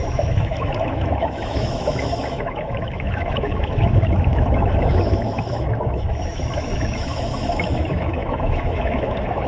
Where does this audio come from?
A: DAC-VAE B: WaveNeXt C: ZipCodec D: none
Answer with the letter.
A